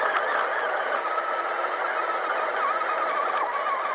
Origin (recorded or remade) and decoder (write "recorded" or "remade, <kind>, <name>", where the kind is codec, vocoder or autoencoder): recorded